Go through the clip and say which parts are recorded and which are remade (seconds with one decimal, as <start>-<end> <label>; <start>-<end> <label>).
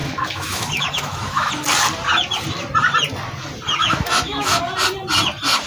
0.0-1.5 remade; 1.5-3.8 recorded; 3.8-4.6 remade; 4.6-5.7 recorded